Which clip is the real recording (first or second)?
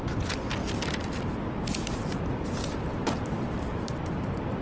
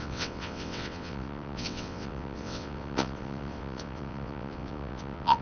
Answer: first